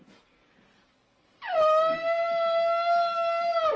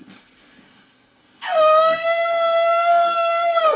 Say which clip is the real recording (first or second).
first